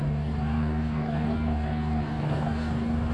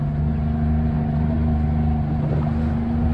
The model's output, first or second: first